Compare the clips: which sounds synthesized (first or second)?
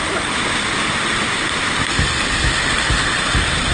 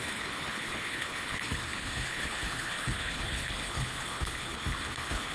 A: second